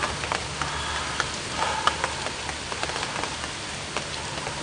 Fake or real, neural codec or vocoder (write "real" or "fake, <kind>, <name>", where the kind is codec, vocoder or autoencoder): real